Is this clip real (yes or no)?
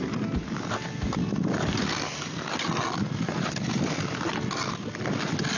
yes